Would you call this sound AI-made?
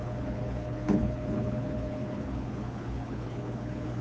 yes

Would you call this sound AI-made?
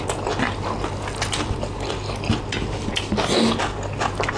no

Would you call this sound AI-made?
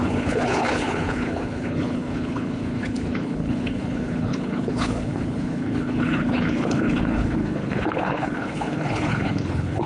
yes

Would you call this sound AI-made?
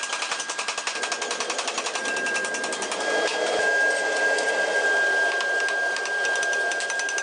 no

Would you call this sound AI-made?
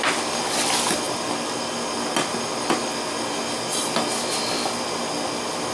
no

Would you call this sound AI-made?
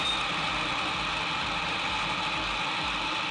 no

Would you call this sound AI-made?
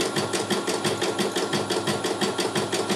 no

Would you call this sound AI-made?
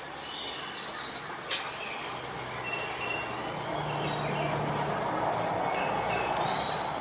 no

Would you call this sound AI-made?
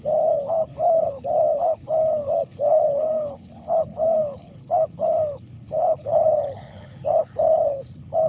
yes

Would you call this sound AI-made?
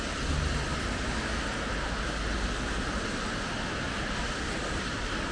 no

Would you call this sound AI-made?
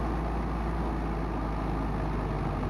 no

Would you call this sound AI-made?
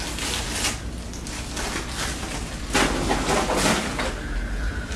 no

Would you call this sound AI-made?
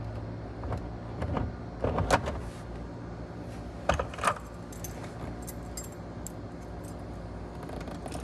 no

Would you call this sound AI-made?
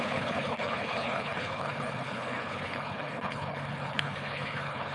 yes